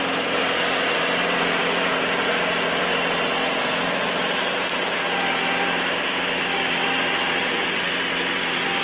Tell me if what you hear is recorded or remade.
remade